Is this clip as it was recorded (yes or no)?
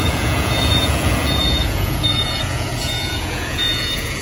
no